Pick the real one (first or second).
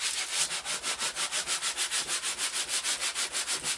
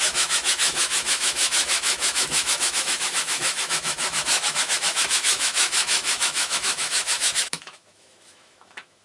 first